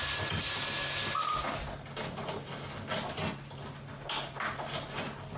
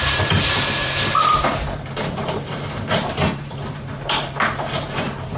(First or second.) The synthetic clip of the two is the second